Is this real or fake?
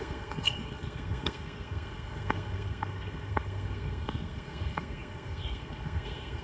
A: fake